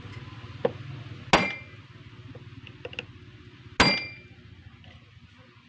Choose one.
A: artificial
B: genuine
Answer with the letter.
B